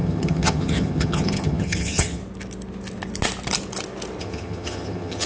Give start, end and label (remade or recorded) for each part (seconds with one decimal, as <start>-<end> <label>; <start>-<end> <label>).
0.0-2.2 remade; 2.2-4.2 recorded; 4.2-5.3 remade